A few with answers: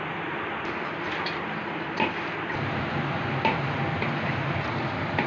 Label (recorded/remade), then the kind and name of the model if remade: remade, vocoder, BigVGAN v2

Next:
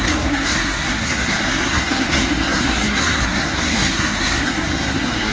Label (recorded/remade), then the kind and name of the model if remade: remade, codec, SNAC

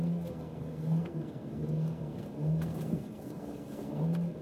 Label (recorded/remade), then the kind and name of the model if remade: remade, codec, SNAC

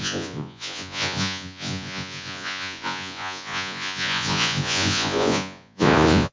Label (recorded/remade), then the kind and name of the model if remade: remade, vocoder, Vocos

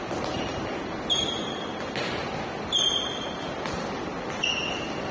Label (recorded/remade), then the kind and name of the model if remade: recorded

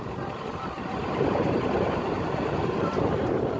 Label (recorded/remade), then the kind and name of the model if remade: remade, vocoder, BigVGAN v2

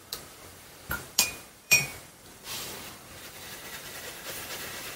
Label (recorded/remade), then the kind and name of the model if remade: remade, vocoder, BigVGAN v2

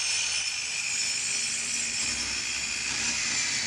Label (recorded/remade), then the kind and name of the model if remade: recorded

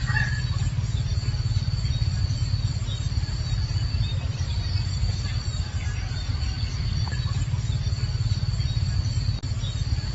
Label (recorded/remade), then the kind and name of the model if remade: recorded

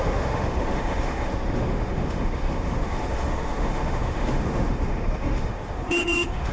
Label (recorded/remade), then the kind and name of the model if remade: remade, autoencoder, DAC-VAE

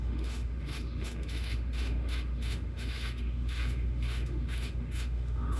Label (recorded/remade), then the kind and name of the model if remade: remade, autoencoder, DAC-VAE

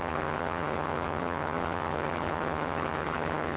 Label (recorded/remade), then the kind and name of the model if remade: remade, vocoder, HiFi-GAN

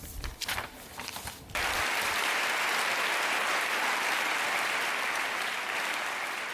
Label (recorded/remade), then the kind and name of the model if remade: recorded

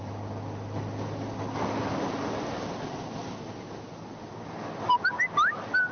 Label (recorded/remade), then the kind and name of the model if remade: recorded